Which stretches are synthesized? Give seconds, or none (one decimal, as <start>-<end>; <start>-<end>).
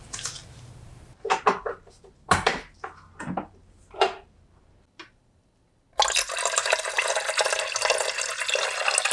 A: 0.4-5.4; 6.6-7.1